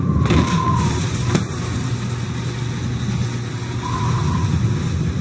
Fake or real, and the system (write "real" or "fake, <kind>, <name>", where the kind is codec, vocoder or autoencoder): real